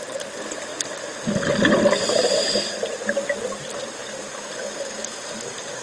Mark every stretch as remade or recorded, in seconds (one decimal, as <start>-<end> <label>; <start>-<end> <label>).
0.0-0.7 remade; 0.7-2.1 recorded; 2.1-2.9 remade; 2.9-5.8 recorded